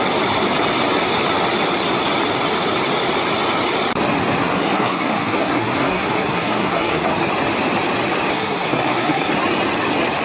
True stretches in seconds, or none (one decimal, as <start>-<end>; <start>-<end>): 0.0-4.4; 7.1-8.3; 9.3-10.2